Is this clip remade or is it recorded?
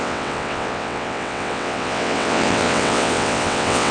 remade